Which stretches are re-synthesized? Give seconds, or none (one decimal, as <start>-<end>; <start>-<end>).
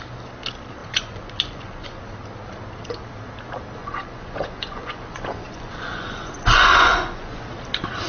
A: 0.8-2.0; 3.8-7.4